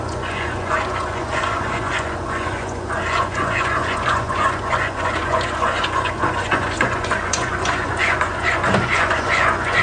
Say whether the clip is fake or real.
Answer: fake